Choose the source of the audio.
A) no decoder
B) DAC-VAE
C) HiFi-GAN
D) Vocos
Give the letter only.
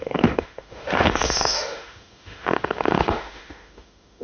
B